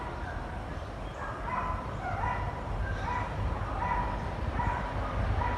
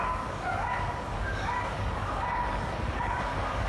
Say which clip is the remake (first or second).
second